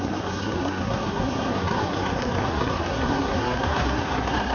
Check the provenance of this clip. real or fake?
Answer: fake